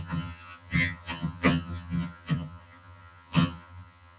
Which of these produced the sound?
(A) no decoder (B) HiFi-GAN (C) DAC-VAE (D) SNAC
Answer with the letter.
B